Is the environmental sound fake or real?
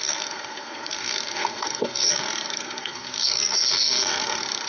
fake